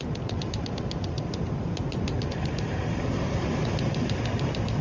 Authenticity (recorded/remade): recorded